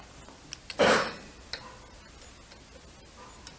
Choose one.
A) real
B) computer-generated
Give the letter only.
A